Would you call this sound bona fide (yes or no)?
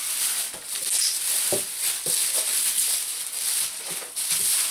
no